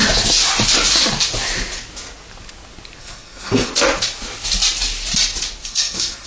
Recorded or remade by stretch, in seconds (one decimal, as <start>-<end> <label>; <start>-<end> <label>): 0.0-3.0 recorded; 3.0-3.7 remade; 3.7-5.6 recorded; 5.6-6.3 remade